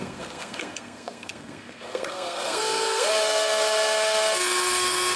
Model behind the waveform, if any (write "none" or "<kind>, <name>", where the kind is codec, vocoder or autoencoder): codec, SNAC